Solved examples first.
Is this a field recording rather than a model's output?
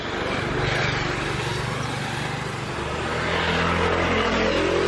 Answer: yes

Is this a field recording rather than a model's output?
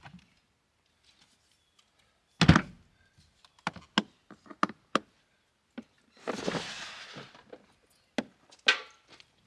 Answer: yes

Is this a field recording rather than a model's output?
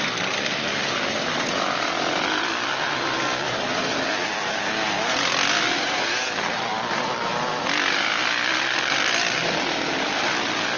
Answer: yes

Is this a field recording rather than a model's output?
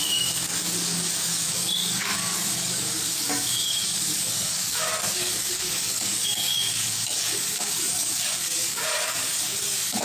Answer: no